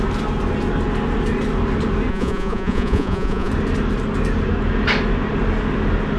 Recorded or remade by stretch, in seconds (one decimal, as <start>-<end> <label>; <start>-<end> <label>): 0.0-2.1 recorded; 2.1-3.5 remade; 3.5-6.2 recorded